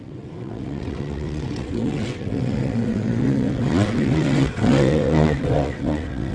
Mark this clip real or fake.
fake